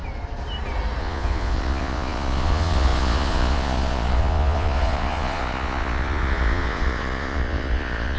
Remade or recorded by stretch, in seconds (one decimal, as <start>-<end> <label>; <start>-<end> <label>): 0.0-1.0 recorded; 1.0-8.2 remade